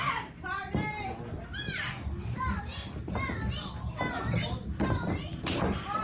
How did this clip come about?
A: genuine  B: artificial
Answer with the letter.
A